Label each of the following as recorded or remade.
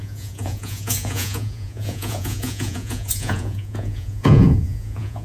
remade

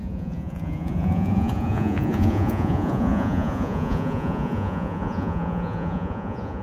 remade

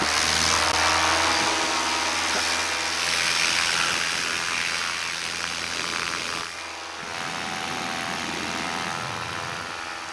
recorded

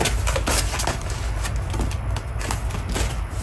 recorded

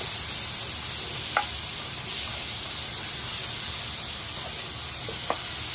recorded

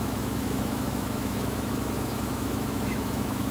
remade